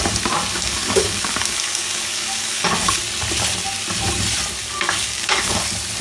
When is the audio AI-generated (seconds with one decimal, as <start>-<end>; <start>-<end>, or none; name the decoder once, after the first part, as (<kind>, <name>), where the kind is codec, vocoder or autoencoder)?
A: 0.5-3.0 (codec, DAC); 4.6-5.6